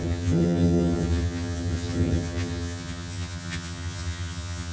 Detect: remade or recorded remade